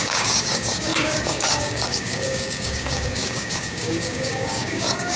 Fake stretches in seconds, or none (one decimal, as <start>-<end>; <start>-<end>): 0.0-5.2